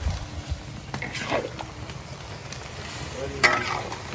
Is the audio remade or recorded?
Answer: recorded